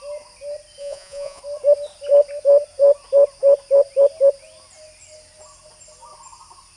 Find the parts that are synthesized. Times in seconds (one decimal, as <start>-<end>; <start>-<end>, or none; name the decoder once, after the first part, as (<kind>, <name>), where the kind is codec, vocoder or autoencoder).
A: 0.8-1.4 (vocoder, Vocos)

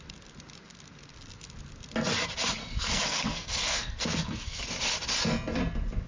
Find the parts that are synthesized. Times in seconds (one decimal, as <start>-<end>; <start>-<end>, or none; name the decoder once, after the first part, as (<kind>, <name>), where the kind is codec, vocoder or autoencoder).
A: 2.6-4.6 (codec, SNAC)

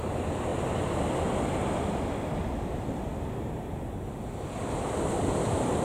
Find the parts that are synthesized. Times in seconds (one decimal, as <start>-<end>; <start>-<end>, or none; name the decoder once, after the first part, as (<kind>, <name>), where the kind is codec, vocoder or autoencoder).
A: none

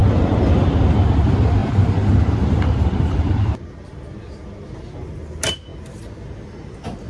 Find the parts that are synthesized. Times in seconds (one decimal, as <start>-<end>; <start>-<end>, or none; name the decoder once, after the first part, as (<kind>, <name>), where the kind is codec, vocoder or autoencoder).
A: none

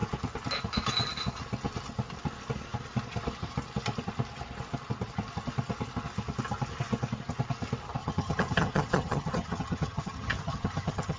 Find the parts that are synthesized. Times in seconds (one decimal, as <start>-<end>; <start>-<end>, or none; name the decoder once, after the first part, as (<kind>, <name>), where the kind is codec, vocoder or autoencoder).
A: 8.0-11.2 (vocoder, HiFi-GAN)

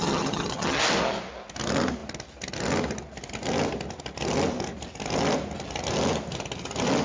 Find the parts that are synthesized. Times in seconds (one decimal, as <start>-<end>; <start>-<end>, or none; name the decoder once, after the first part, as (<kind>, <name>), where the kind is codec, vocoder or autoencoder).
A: 0.0-0.8 (vocoder, HiFi-GAN)

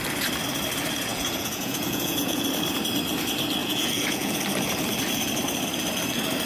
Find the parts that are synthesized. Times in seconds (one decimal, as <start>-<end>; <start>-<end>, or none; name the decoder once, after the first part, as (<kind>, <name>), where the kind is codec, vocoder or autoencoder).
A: 1.1-2.4 (vocoder, Vocos); 3.6-4.4

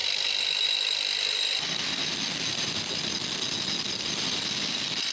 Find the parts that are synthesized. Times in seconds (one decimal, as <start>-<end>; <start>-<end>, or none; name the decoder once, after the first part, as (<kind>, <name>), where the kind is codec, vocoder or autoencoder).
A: 0.0-3.1 (vocoder, BigVGAN v2)